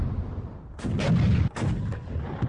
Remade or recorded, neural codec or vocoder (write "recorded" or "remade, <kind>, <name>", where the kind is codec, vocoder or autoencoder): recorded